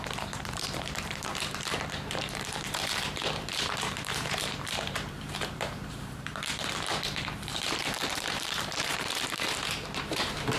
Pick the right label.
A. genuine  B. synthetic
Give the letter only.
B